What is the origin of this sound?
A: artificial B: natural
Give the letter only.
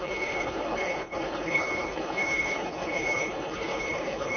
A